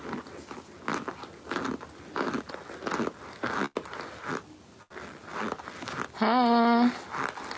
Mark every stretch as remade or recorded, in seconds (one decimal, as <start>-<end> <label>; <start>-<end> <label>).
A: 0.0-7.6 recorded